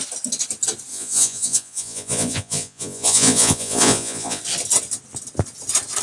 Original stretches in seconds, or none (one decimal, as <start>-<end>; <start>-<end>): 0.0-0.9; 4.4-6.0